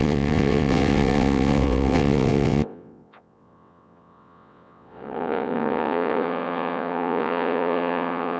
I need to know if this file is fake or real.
fake